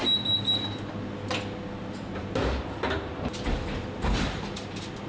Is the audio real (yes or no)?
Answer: yes